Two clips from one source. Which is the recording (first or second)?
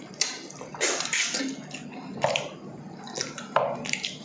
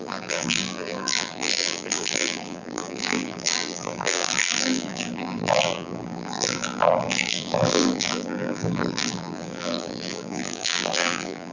first